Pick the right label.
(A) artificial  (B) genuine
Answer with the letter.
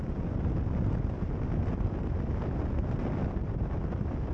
B